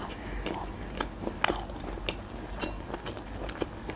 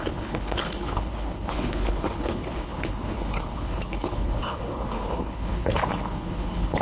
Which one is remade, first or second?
second